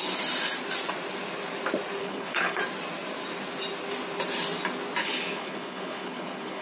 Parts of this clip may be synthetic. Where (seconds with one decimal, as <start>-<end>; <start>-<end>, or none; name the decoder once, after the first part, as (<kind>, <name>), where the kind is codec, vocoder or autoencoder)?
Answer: 2.0-2.6 (codec, HILCodec); 5.0-6.6